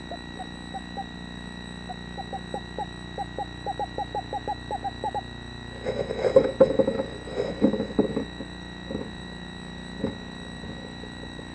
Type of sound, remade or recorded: remade